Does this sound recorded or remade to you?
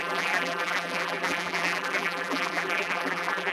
remade